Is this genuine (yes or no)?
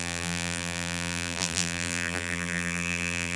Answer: no